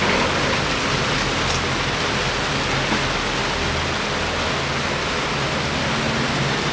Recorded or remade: recorded